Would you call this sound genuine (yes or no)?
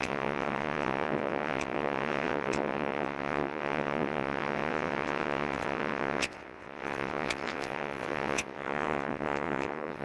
no